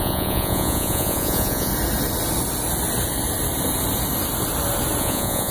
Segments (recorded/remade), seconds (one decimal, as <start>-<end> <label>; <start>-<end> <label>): 0.0-1.7 remade; 1.7-5.0 recorded; 5.0-5.5 remade